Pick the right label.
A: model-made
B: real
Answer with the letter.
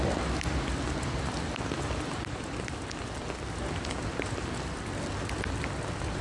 B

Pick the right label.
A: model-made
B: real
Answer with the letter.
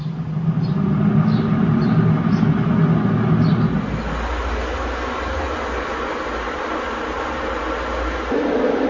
B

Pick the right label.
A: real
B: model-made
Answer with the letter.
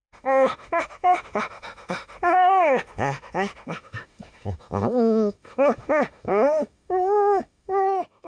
B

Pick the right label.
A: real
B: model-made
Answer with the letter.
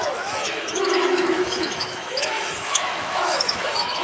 B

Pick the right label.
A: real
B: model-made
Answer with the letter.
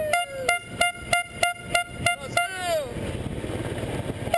A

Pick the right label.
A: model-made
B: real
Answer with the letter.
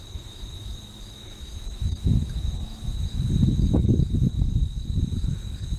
A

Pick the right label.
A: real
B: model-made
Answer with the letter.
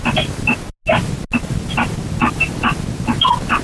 A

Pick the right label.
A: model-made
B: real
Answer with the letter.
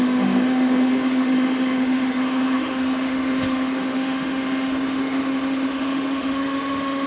A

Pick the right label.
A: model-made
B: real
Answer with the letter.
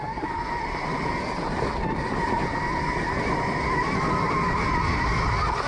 B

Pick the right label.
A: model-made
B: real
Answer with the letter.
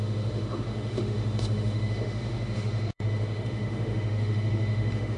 A